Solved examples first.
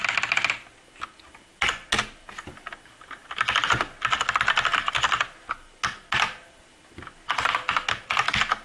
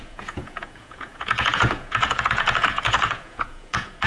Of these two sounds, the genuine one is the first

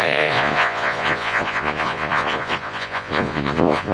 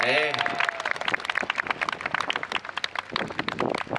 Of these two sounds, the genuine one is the second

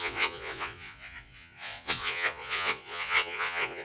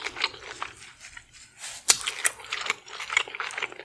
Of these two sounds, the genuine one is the second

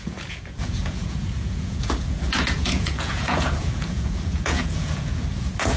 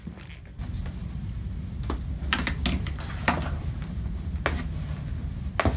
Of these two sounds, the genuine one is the second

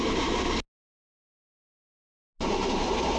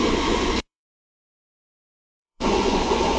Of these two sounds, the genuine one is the first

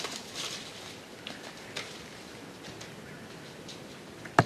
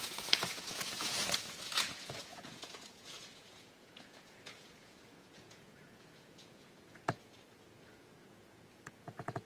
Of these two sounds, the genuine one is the first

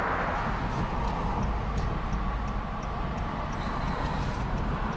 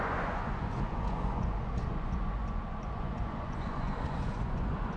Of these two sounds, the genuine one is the first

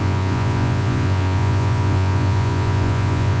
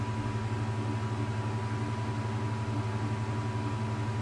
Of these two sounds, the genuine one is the second